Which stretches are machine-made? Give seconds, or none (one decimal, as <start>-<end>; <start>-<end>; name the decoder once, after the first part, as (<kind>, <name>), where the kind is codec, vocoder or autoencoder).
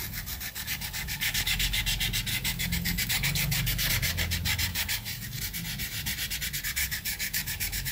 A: 0.0-1.8 (codec, DAC); 2.3-3.9; 4.7-5.4; 6.8-7.9